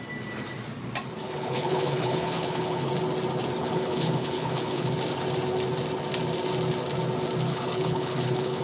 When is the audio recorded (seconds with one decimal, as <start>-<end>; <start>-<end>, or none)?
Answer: 0.0-1.2; 2.9-3.6; 4.9-7.5